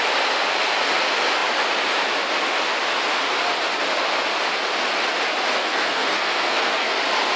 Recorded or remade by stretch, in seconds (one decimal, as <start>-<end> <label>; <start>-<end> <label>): 0.0-5.6 recorded; 5.6-7.0 remade; 7.0-7.4 recorded